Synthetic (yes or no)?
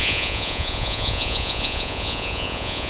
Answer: yes